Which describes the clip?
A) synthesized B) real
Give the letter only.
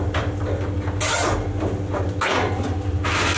B